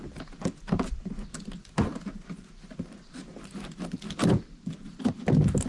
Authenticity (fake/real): real